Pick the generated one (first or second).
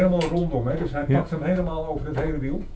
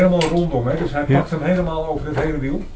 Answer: first